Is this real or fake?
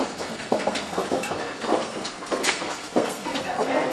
fake